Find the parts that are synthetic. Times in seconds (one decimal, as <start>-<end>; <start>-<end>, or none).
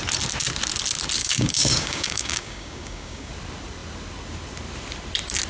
1.2-3.3